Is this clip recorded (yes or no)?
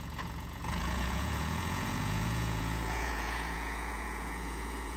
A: no